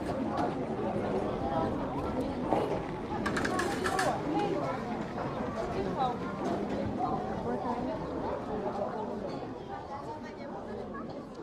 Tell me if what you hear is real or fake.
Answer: real